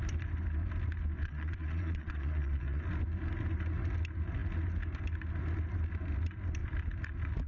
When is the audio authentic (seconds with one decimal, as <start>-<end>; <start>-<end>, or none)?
0.0-1.2; 2.8-7.5